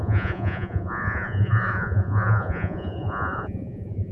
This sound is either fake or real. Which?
fake